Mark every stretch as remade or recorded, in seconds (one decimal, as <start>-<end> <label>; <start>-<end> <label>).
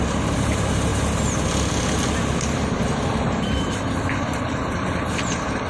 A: 0.0-5.7 remade